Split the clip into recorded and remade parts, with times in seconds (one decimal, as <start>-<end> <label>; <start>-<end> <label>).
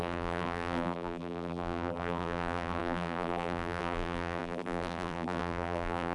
0.0-6.1 remade